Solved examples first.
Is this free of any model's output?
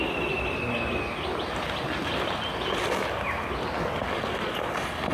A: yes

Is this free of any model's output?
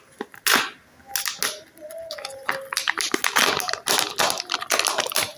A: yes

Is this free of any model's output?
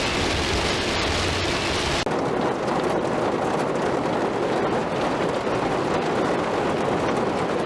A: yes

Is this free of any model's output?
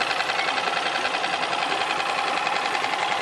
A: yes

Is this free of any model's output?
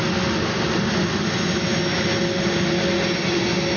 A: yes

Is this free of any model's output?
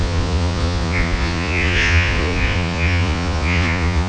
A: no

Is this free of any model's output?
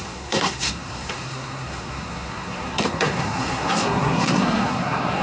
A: no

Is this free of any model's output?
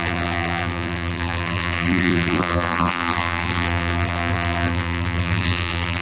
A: no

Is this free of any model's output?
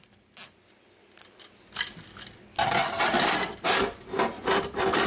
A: yes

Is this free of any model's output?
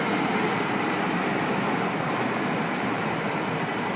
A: no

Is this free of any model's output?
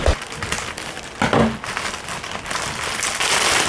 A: yes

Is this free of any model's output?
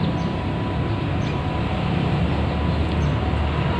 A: yes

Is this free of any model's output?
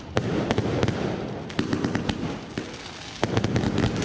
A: yes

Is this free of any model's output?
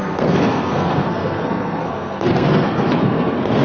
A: no